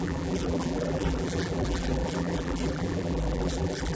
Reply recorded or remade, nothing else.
remade